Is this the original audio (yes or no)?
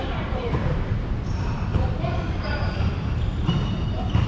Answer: no